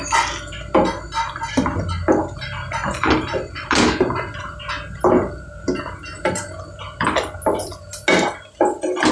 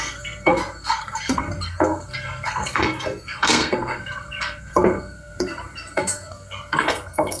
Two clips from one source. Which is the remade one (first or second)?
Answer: second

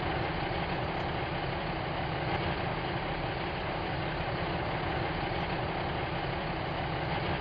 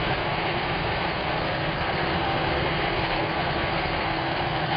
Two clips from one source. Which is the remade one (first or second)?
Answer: second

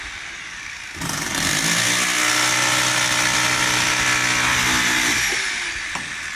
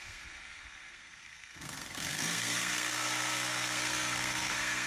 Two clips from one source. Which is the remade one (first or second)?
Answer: second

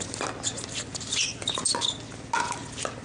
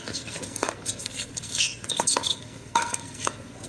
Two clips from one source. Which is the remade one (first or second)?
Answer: second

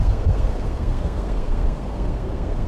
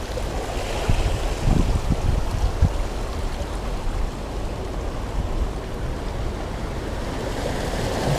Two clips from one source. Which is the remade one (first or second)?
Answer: first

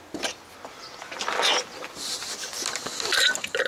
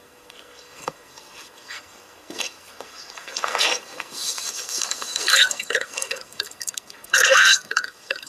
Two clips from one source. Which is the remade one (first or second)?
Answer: second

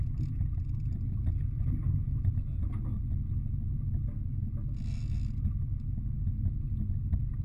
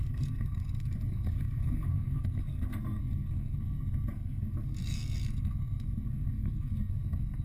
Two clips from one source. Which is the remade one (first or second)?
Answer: second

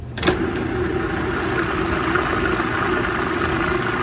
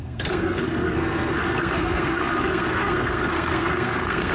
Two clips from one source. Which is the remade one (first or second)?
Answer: second